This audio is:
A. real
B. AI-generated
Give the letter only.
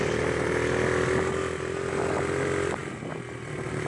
A